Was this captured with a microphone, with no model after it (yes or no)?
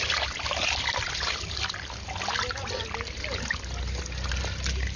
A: yes